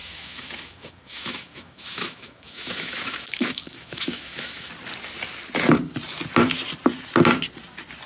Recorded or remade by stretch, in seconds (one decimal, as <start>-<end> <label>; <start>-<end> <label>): 0.0-4.7 remade; 4.7-8.1 recorded